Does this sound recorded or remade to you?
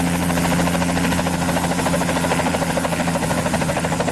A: recorded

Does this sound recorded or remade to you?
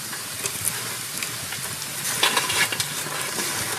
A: recorded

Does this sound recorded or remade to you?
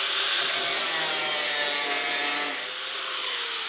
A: recorded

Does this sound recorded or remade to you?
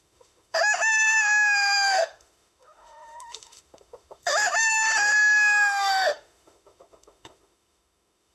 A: remade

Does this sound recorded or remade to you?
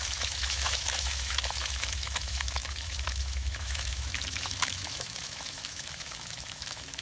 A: remade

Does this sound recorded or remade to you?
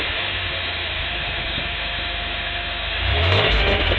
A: remade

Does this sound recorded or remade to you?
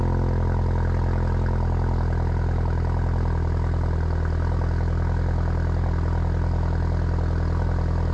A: recorded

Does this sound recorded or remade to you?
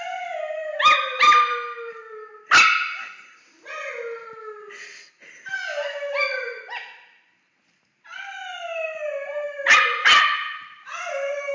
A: recorded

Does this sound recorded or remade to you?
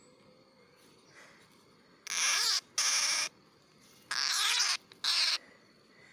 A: recorded